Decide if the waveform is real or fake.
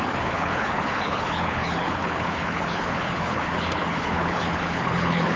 fake